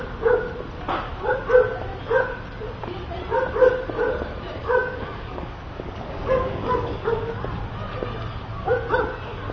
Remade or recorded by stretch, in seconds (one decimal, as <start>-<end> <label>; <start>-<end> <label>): 0.0-4.6 recorded; 4.6-7.3 remade; 7.3-9.5 recorded